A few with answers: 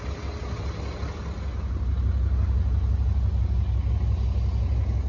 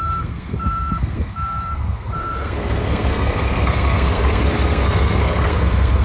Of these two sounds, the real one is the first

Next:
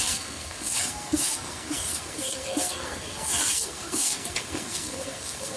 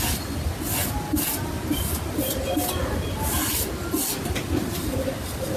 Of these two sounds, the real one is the second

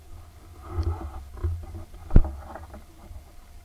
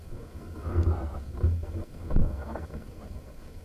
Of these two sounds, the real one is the first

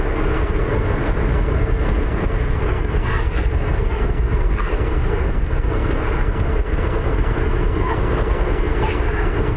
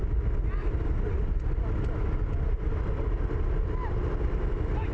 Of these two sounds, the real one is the second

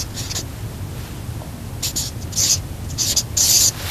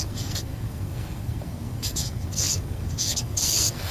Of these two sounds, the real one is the first